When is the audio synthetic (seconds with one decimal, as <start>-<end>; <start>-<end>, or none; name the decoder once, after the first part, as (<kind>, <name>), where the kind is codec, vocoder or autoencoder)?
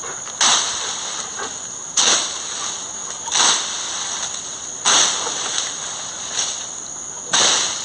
none